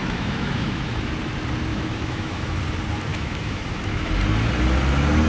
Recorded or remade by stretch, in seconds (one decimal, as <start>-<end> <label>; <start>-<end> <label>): 0.0-1.1 remade; 1.1-1.7 recorded; 1.7-2.6 remade; 2.6-3.1 recorded; 3.1-4.1 remade; 4.1-5.3 recorded